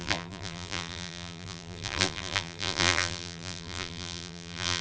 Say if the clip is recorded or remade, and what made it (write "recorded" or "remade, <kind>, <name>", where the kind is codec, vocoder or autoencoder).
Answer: remade, vocoder, BigVGAN v2